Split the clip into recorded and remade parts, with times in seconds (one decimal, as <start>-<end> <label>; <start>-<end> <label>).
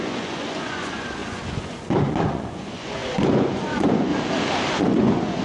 0.0-4.1 remade; 4.1-4.8 recorded; 4.8-5.4 remade